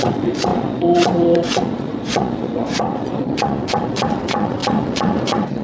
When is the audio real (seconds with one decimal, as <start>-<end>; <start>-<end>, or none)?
none